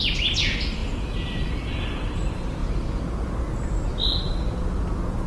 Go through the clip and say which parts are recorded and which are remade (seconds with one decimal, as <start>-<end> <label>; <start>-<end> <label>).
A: 0.0-5.3 recorded